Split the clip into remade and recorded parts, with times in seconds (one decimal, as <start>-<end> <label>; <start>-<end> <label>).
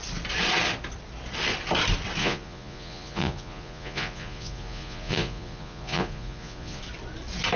0.0-2.2 recorded; 2.2-6.8 remade; 6.8-7.6 recorded